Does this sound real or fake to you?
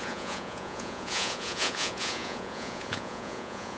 fake